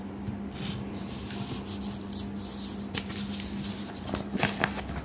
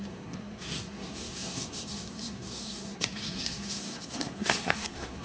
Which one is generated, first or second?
second